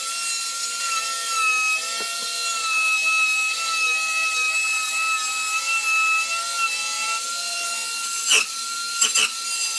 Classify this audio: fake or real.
real